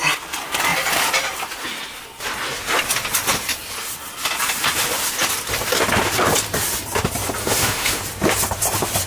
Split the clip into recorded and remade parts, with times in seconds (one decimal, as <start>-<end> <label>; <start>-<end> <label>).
0.0-7.4 recorded; 7.4-8.0 remade; 8.0-9.1 recorded